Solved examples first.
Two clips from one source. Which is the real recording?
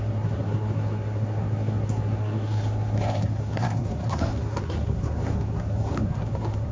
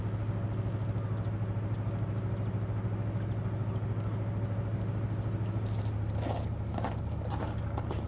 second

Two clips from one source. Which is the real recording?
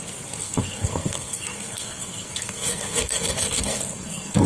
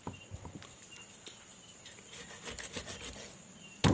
second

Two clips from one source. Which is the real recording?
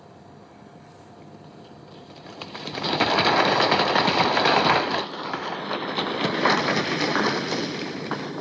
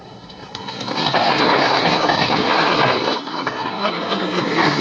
first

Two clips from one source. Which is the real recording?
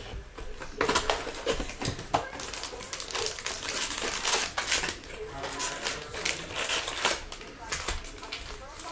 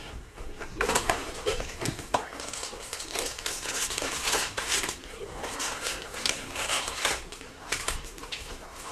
first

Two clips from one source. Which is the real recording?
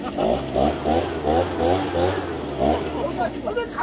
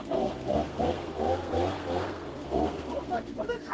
first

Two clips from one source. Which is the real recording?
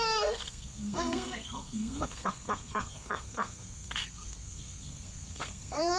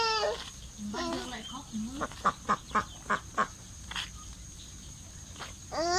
second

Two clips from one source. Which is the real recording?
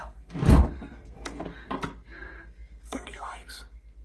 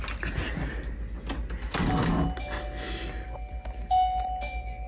second